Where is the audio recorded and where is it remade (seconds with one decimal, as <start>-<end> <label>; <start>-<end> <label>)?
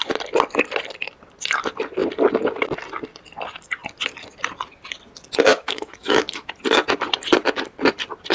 0.0-5.5 recorded; 5.5-6.5 remade; 6.5-8.3 recorded